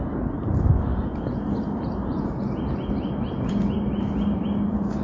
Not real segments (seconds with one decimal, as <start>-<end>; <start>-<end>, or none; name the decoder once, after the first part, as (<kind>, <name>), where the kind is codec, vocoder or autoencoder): none

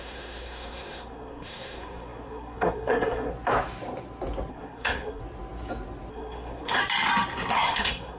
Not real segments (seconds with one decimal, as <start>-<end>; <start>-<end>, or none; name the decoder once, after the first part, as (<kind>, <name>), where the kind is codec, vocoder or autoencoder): 0.0-3.3 (codec, SNAC); 4.5-5.2; 6.1-6.8; 7.5-8.2

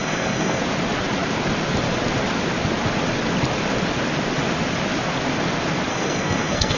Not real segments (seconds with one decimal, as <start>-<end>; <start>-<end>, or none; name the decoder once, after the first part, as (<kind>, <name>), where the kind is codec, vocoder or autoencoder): 0.0-0.6 (codec, SNAC); 5.9-6.8